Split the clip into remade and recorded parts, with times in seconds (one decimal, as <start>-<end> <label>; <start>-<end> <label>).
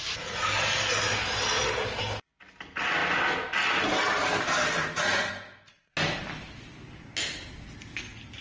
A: 0.0-8.4 recorded